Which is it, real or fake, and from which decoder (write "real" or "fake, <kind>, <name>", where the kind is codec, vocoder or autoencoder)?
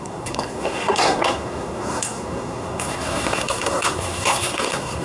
fake, codec, SNAC